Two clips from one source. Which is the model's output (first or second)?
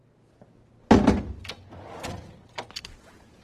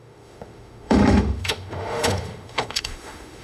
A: second